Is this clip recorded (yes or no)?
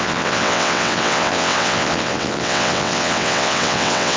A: no